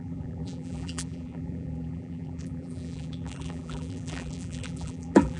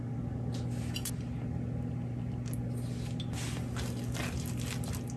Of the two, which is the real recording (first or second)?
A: second